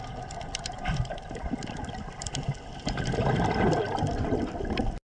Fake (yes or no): no